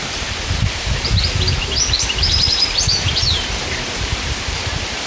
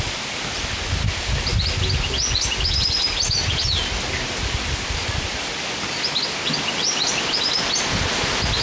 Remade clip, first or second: first